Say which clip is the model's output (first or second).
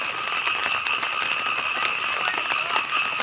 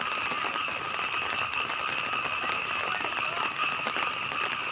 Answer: second